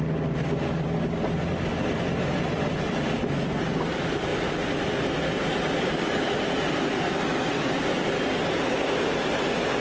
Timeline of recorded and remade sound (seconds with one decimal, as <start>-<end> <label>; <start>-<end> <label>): 0.0-9.8 recorded